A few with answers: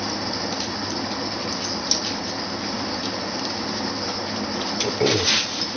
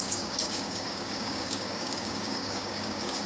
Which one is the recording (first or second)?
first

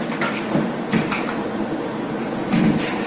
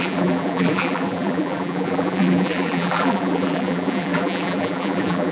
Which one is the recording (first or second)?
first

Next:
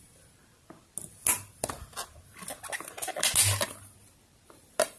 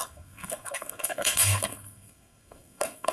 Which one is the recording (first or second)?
first